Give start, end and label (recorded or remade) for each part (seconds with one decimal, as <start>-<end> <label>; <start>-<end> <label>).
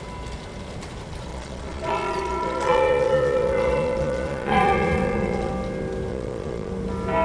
0.0-1.3 recorded; 1.3-5.5 remade; 5.5-6.1 recorded; 6.1-6.7 remade; 6.7-7.2 recorded